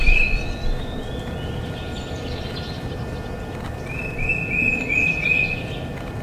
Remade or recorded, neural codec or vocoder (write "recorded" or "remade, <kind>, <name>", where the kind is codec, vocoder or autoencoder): recorded